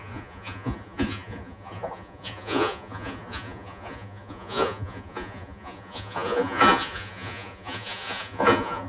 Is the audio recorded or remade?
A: remade